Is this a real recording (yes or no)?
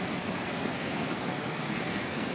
no